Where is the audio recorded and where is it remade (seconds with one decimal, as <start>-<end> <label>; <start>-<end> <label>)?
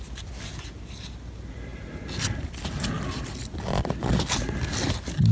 0.0-5.3 recorded